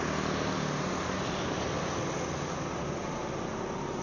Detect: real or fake real